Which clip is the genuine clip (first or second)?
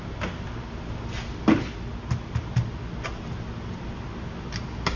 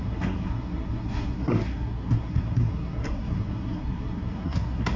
first